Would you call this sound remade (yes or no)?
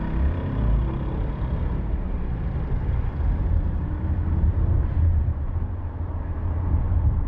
yes